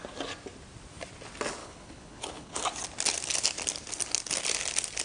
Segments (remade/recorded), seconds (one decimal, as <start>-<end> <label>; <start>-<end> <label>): 0.0-1.6 recorded; 1.6-2.6 remade; 2.6-5.0 recorded